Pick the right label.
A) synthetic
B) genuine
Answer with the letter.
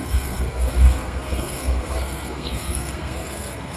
A